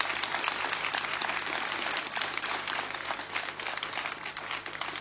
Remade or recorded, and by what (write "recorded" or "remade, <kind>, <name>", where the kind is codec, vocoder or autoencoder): recorded